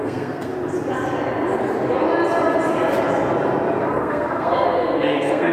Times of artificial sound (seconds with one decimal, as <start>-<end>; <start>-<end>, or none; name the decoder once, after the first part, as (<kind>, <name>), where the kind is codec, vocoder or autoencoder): 0.0-0.5 (codec, SNAC); 3.8-5.5